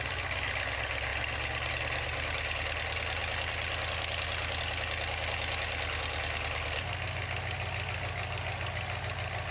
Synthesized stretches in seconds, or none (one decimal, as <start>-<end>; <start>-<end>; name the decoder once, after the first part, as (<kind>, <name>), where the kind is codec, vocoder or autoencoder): none